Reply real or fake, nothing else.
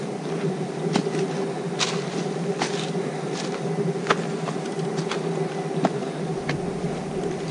real